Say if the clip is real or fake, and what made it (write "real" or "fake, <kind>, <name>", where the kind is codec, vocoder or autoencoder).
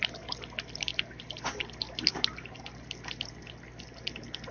real